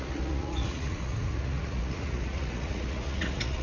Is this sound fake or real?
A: fake